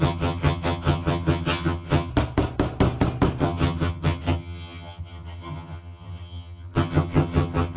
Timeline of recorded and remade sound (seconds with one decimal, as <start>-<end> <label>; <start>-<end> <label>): 0.0-2.1 remade; 2.1-3.4 recorded; 3.4-7.8 remade